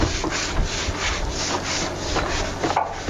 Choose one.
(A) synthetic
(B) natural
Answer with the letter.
B